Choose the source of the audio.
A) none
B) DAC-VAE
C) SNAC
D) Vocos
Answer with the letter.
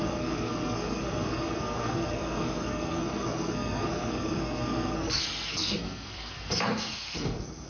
C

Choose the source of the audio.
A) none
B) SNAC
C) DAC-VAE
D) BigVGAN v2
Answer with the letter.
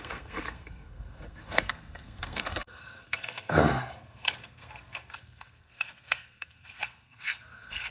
B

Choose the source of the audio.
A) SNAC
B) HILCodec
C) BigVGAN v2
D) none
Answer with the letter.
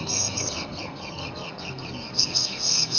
A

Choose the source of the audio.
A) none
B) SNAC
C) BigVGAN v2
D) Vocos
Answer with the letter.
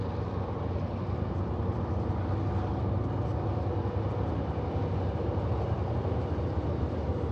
A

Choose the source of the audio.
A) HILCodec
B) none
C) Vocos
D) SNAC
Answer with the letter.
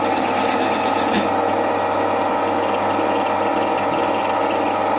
B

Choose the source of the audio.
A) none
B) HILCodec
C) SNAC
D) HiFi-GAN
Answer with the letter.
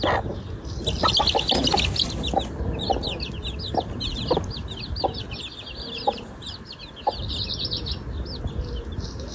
A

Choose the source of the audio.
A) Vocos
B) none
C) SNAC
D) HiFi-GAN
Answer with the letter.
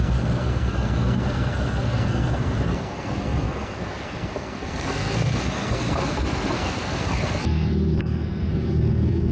C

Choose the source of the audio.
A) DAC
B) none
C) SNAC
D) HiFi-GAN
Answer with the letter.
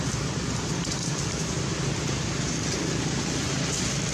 B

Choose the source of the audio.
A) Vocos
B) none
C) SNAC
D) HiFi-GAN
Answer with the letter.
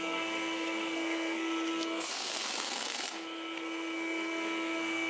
C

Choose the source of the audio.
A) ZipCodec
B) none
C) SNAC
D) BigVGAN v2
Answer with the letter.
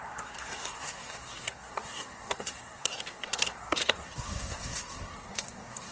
C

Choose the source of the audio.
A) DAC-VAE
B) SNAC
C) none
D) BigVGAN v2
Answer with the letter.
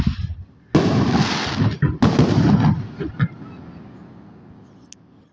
C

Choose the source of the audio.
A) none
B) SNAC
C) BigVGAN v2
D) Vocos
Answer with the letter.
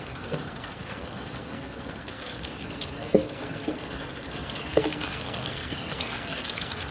B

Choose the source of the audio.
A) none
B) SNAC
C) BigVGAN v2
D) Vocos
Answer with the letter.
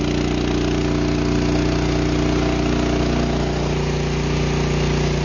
A